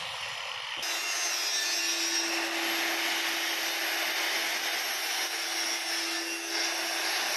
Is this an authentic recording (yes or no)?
yes